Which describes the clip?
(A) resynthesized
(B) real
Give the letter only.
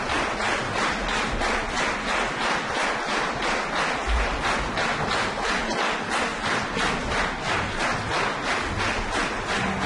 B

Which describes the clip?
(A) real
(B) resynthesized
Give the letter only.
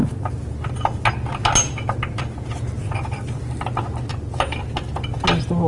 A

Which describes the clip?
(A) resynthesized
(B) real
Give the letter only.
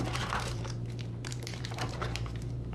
A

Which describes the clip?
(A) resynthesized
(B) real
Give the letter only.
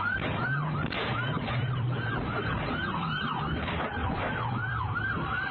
A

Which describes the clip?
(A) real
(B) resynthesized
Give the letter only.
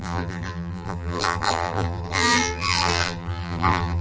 B